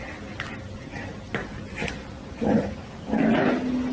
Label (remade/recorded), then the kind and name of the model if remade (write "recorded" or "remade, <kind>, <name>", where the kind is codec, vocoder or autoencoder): recorded